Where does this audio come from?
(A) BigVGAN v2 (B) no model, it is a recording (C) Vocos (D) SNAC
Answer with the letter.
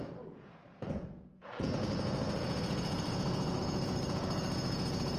C